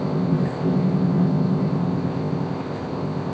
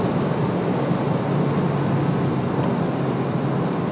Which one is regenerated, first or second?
first